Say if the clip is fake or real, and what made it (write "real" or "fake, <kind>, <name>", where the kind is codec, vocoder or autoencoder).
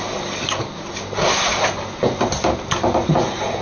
real